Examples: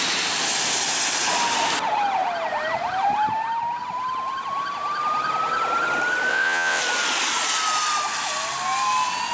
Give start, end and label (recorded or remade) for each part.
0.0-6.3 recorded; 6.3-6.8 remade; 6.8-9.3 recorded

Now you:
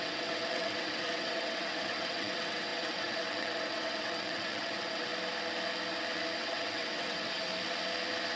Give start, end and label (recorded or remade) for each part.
0.0-5.1 remade; 5.1-6.4 recorded; 6.4-7.5 remade; 7.5-8.4 recorded

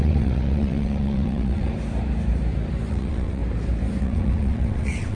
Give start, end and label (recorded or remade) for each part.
0.0-1.7 remade; 1.7-2.9 recorded; 2.9-3.4 remade; 3.4-4.0 recorded; 4.0-5.1 remade

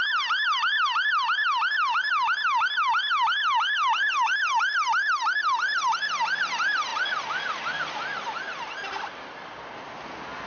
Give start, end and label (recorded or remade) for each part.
0.0-10.5 recorded

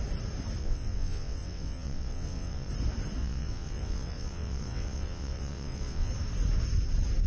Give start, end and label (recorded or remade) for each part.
0.0-0.6 recorded; 0.6-2.7 remade; 2.7-3.2 recorded; 3.2-6.1 remade; 6.1-7.3 recorded

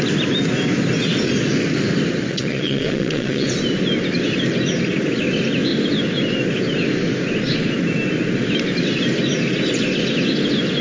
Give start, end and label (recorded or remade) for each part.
0.0-2.3 recorded; 2.3-3.5 remade; 3.5-10.8 recorded